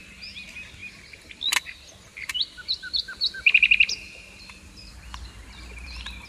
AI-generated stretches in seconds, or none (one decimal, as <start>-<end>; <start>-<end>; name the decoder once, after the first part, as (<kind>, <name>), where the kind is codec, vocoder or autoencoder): 0.8-1.4 (vocoder, BigVGAN v2); 2.1-6.3